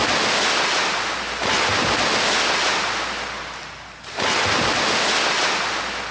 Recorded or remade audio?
recorded